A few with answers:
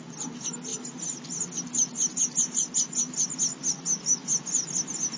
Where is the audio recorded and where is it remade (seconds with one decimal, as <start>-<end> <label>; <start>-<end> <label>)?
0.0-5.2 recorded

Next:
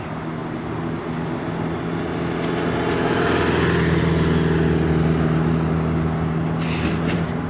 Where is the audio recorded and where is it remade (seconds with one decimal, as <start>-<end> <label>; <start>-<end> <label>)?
0.0-7.5 recorded

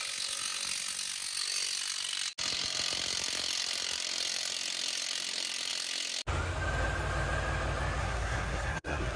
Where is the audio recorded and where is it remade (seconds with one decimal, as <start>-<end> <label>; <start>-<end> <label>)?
0.0-8.0 recorded; 8.0-9.2 remade